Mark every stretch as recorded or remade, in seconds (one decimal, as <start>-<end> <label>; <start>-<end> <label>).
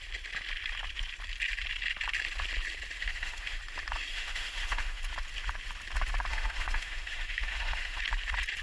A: 0.0-3.0 recorded; 3.0-3.6 remade; 3.6-4.1 recorded; 4.1-5.0 remade; 5.0-6.3 recorded; 6.3-8.0 remade; 8.0-8.6 recorded